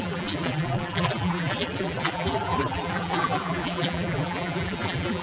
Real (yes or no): no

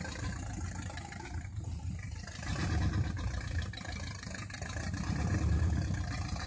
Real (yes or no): no